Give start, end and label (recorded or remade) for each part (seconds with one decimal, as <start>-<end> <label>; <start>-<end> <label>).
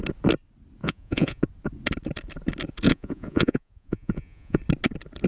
0.0-0.8 recorded; 0.8-1.4 remade; 1.4-2.9 recorded; 2.9-4.6 remade; 4.6-5.3 recorded